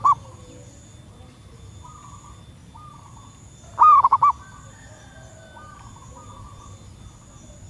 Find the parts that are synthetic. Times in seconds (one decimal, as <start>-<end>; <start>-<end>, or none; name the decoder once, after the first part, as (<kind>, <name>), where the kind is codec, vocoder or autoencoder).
none